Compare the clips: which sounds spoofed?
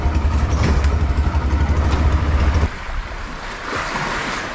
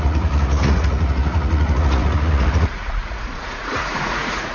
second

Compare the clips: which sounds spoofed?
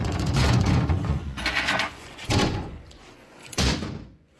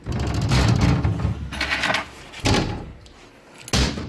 first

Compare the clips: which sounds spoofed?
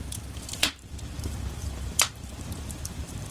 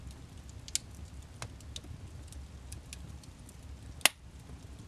first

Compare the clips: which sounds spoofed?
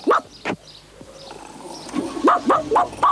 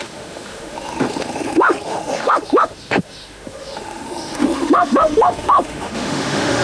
second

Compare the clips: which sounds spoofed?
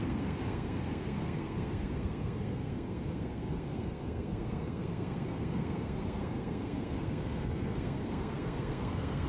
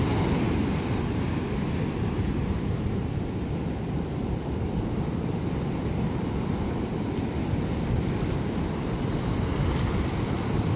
first